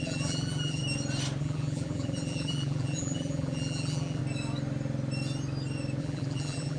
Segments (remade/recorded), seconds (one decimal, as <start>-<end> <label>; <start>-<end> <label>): 0.0-0.8 remade; 0.8-1.4 recorded; 1.4-4.2 remade; 4.2-6.0 recorded; 6.0-6.8 remade